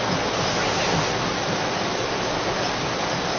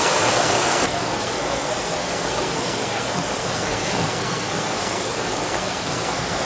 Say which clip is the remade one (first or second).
second